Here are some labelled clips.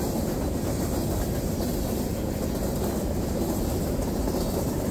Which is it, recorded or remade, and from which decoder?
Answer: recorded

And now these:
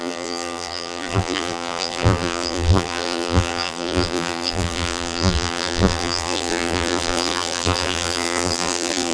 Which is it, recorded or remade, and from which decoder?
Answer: remade, vocoder, BigVGAN v2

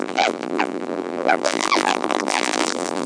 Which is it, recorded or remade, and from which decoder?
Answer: remade, vocoder, BigVGAN v2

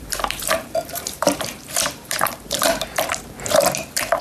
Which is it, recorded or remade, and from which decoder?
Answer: remade, vocoder, BigVGAN v2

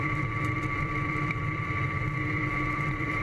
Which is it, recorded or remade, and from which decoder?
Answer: remade, vocoder, BigVGAN v2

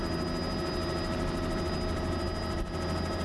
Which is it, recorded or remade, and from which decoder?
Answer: recorded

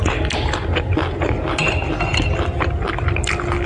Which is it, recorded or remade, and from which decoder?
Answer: recorded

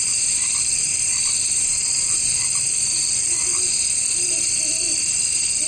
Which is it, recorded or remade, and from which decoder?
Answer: remade, vocoder, BigVGAN v2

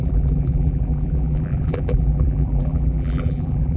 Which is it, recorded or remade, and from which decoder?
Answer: remade, vocoder, BigVGAN v2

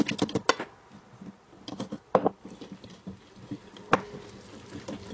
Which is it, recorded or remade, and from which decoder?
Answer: recorded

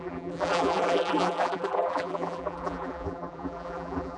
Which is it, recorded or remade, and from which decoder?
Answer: remade, vocoder, BigVGAN v2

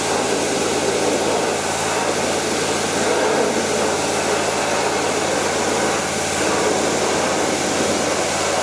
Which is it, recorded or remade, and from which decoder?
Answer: recorded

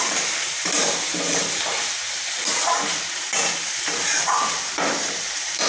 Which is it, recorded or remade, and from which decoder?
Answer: remade, vocoder, BigVGAN v2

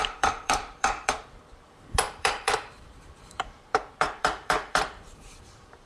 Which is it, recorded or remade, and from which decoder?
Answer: remade, vocoder, BigVGAN v2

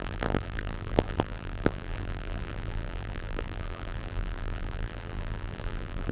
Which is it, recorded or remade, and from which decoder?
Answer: remade, vocoder, BigVGAN v2